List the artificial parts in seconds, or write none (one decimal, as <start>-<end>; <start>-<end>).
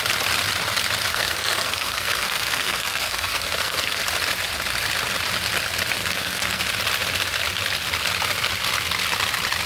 1.1-4.0; 6.0-6.6